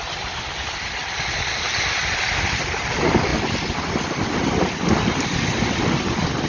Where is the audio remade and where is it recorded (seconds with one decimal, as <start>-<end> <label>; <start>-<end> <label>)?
0.0-6.5 recorded